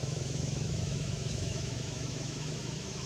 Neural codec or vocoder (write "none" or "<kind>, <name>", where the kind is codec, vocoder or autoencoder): autoencoder, DAC-VAE